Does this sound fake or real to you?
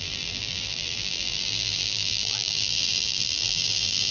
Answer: fake